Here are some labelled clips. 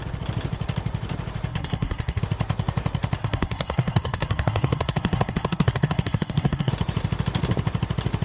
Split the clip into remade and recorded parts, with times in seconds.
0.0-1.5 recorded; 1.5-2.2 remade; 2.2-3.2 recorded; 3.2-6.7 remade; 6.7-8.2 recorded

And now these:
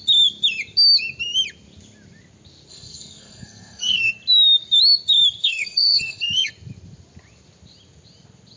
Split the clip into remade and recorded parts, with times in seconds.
0.0-2.7 recorded; 2.7-4.1 remade; 4.1-5.4 recorded; 5.4-6.5 remade; 6.5-8.6 recorded

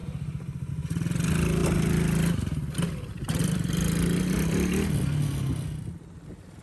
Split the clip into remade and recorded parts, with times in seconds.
0.0-6.6 recorded